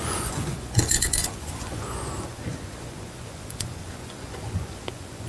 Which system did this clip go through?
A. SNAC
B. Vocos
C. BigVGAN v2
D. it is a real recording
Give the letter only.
B